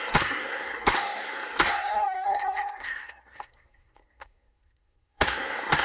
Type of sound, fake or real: fake